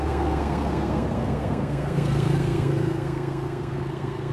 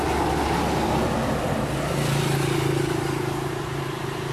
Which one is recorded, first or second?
second